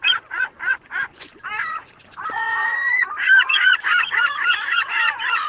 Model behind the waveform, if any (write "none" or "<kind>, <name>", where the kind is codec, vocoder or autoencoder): vocoder, Vocos